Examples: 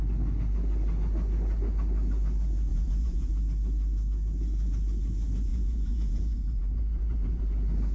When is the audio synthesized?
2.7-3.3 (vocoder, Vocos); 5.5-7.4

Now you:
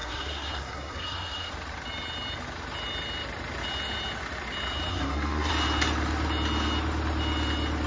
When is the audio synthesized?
0.0-1.5 (codec, SNAC); 4.9-5.5

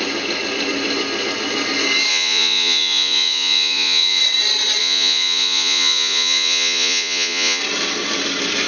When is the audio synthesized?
2.1-4.2 (vocoder, Vocos); 4.8-7.6

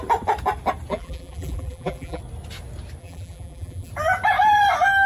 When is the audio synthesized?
0.9-2.2 (vocoder, BigVGAN v2); 3.0-3.9